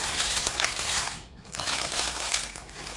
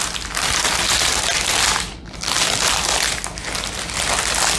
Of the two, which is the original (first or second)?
second